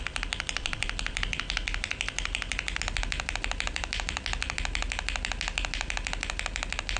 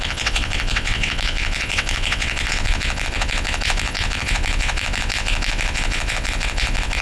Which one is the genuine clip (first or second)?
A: first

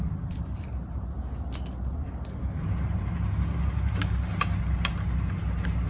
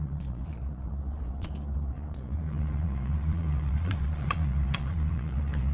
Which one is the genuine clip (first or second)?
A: first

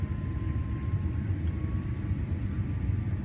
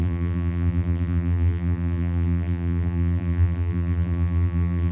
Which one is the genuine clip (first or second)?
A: first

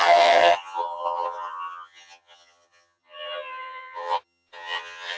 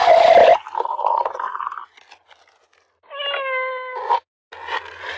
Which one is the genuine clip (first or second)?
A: second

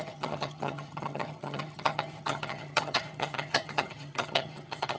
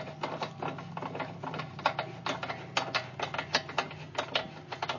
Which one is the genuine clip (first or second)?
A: second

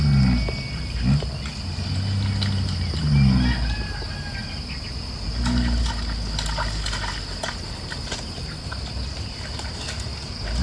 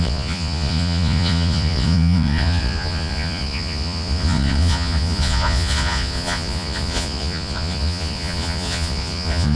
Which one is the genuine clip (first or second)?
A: first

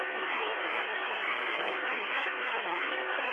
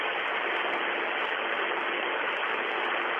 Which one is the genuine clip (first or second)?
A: second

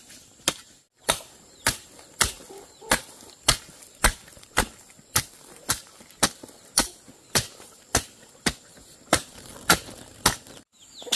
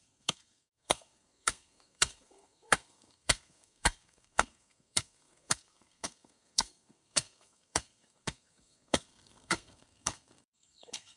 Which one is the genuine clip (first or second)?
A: first